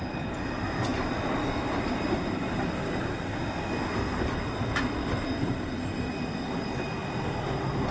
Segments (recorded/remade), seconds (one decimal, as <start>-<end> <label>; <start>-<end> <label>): 0.0-7.9 recorded